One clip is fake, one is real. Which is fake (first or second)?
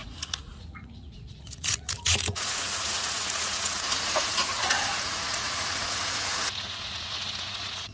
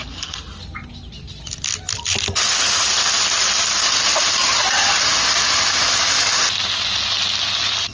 first